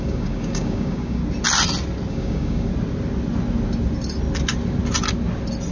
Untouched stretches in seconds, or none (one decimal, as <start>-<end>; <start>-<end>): 1.2-2.1; 2.7-5.7